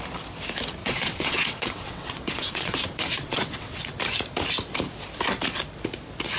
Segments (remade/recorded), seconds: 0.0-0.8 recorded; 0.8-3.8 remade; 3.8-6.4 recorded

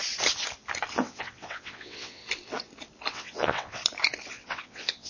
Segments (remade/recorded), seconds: 0.0-0.9 recorded; 0.9-2.2 remade; 2.2-3.1 recorded; 3.1-3.8 remade; 3.8-4.3 recorded; 4.3-5.1 remade